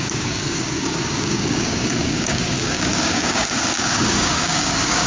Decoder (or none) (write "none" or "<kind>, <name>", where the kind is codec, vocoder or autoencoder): codec, DAC